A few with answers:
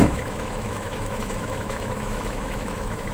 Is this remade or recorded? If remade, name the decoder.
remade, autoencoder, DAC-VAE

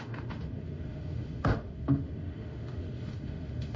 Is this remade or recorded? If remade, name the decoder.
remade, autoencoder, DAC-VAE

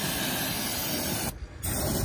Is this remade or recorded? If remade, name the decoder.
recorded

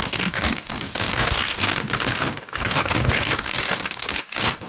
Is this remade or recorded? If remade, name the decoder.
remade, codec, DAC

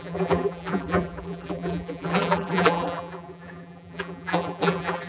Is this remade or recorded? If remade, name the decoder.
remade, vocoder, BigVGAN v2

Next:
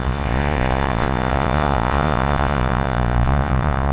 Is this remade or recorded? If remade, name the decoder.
remade, vocoder, Vocos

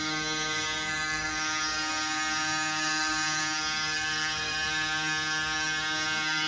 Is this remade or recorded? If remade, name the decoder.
remade, codec, SNAC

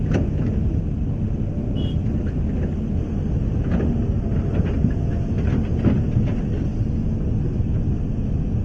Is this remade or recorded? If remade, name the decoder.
recorded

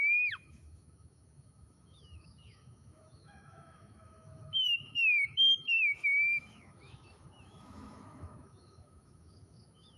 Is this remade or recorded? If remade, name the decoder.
remade, autoencoder, DAC-VAE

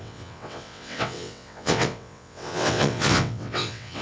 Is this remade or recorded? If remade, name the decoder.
remade, vocoder, WaveNeXt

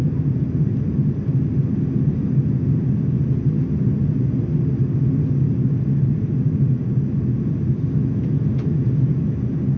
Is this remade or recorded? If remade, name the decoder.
recorded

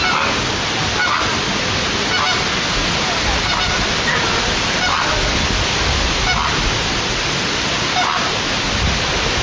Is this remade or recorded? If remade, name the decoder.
recorded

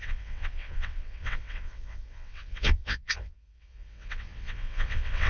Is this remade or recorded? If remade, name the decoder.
remade, vocoder, WaveNeXt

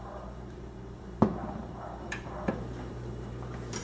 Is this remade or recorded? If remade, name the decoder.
remade, vocoder, BigVGAN v2